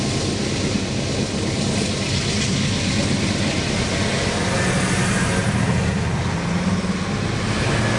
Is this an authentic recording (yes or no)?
yes